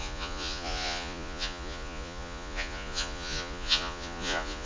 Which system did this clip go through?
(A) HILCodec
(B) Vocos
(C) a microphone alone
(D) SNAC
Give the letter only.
B